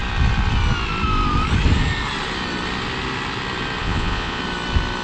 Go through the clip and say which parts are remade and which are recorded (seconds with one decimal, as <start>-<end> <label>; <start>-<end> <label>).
0.0-3.8 recorded; 3.8-4.4 remade; 4.4-5.0 recorded